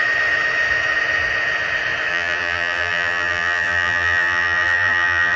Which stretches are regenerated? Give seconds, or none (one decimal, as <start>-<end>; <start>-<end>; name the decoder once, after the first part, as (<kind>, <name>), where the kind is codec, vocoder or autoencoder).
2.1-5.4 (vocoder, BigVGAN v2)